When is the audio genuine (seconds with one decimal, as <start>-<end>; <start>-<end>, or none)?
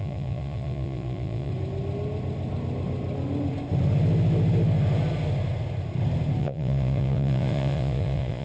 1.5-6.4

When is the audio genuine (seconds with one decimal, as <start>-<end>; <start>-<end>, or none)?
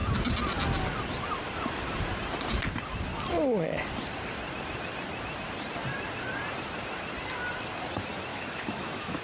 0.0-8.3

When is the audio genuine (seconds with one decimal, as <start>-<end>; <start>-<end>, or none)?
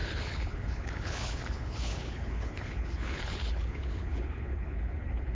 none